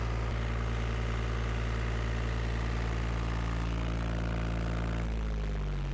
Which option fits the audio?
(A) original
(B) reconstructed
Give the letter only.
A